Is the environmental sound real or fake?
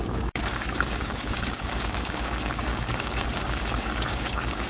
fake